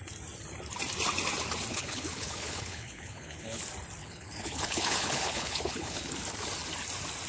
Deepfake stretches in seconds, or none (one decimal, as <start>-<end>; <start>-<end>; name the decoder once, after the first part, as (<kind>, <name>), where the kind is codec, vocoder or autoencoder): 1.7-3.6 (codec, HILCodec); 4.0-6.1